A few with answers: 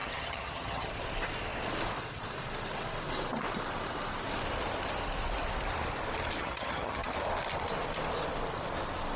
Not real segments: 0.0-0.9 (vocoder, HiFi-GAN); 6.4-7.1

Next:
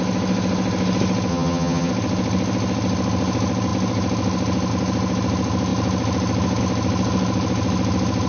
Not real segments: 1.3-1.9 (vocoder, HiFi-GAN)

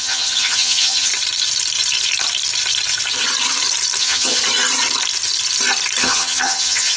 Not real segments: 0.0-1.1 (vocoder, HiFi-GAN); 4.0-4.4; 6.0-7.0

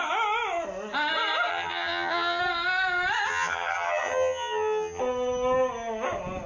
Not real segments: 1.5-2.4 (vocoder, HiFi-GAN); 3.3-5.0

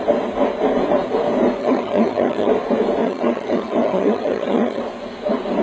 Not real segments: 1.6-2.5 (vocoder, HiFi-GAN); 3.0-4.8

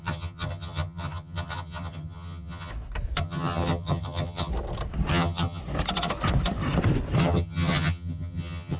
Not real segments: 0.0-2.7 (vocoder, HiFi-GAN); 3.2-4.5; 5.1-5.6; 7.2-8.8

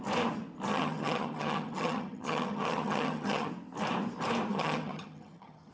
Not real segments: 0.7-3.5 (vocoder, HiFi-GAN); 4.5-5.7